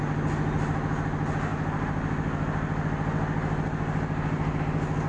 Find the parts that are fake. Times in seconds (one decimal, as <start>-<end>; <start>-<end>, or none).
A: none